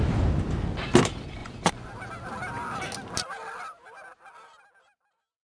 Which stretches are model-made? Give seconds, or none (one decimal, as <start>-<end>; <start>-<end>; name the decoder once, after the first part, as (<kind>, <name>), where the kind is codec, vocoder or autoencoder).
1.4-1.9 (vocoder, Vocos)

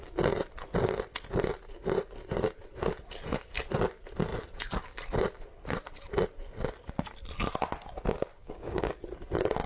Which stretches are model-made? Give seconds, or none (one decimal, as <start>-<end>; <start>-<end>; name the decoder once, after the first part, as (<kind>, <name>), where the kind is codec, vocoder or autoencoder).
8.4-8.9 (codec, DAC)

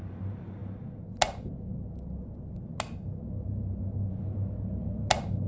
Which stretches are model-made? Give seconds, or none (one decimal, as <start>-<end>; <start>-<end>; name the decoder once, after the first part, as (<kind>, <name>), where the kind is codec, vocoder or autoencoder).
none